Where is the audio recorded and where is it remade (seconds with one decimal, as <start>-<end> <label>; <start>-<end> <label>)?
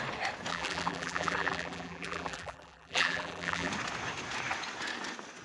0.0-0.5 recorded; 0.5-3.7 remade; 3.7-5.4 recorded